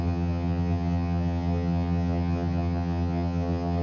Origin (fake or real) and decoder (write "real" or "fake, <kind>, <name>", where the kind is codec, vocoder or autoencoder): fake, vocoder, HiFi-GAN